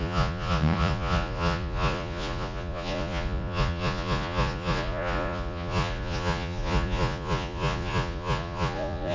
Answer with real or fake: fake